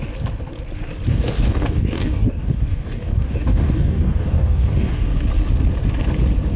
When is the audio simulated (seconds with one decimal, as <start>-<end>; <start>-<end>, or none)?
1.1-5.1